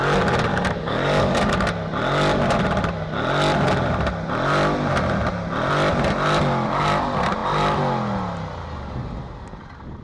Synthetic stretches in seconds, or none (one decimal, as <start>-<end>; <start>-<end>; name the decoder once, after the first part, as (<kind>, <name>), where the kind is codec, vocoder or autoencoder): 0.5-1.5 (codec, DAC)